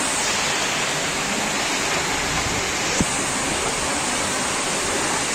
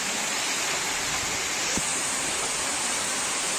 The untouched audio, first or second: first